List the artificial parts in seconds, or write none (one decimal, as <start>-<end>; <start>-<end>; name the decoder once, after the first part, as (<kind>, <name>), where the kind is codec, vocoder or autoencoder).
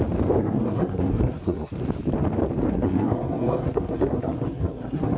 0.4-1.7 (codec, SNAC); 2.7-5.2